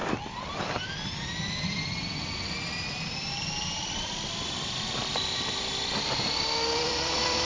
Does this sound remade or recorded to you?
remade